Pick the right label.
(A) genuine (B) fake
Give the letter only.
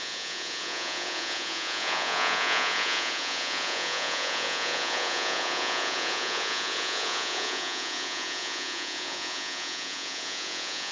B